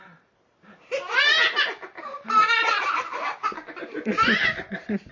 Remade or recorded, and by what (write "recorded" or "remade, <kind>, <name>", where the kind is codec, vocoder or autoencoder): recorded